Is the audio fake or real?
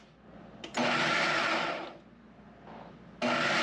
real